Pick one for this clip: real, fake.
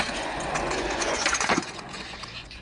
fake